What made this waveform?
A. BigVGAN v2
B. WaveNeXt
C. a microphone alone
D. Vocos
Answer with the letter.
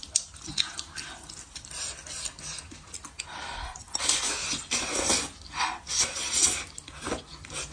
C